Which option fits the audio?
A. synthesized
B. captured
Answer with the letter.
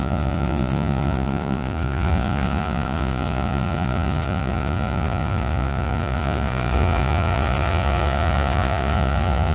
A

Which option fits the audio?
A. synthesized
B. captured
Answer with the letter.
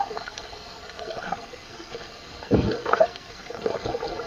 A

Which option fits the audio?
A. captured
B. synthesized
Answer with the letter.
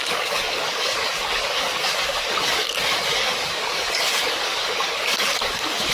B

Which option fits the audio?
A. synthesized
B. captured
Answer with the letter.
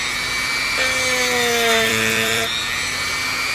A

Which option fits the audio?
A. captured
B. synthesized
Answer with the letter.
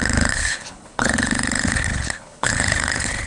B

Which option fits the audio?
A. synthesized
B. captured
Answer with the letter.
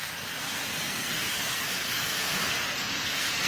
A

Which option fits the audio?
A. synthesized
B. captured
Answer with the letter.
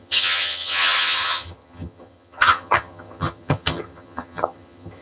A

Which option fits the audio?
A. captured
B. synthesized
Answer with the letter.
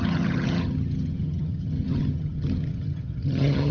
B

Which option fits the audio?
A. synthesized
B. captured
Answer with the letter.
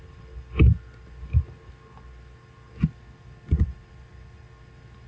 B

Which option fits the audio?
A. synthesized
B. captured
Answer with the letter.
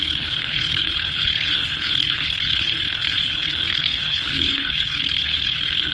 A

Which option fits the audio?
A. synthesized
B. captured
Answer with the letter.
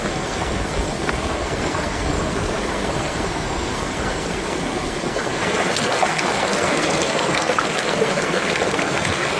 A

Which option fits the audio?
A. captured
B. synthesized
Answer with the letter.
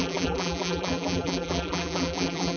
B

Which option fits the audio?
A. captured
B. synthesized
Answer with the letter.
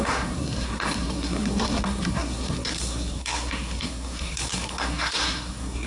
B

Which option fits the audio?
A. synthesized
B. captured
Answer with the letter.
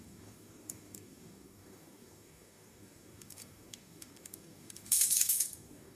A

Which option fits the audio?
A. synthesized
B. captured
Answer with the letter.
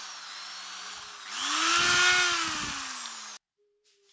B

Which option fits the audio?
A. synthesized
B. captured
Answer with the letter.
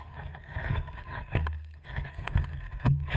A